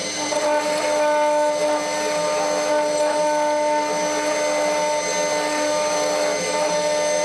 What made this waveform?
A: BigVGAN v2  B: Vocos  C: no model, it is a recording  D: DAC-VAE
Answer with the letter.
C